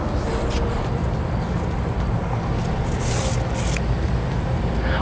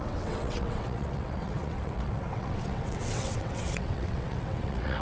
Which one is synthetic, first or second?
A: second